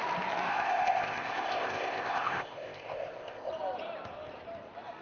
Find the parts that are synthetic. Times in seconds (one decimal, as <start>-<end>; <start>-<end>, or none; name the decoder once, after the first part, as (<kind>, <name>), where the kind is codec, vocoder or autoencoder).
0.5-3.5 (codec, ZipCodec)